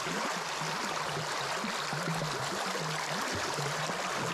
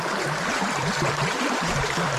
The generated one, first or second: second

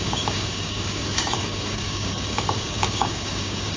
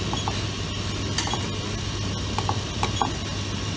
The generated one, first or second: first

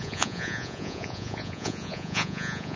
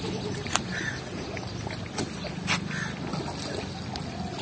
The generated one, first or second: first